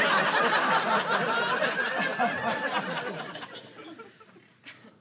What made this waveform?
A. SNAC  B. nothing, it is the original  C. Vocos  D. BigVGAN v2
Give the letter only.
B